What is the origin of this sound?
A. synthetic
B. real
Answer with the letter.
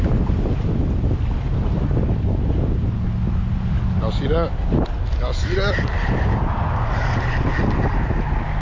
B